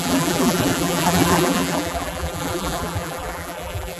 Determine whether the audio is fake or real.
fake